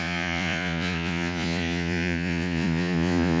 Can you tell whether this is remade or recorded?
remade